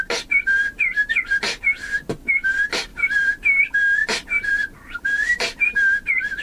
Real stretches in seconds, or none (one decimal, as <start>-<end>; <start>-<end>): 0.0-2.9; 3.6-6.4